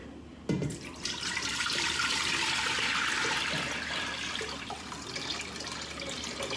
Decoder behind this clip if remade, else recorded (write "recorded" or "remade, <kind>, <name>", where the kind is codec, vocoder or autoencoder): remade, vocoder, BigVGAN v2